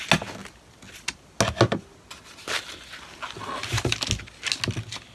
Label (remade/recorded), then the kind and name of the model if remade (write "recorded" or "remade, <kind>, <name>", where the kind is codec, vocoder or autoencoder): recorded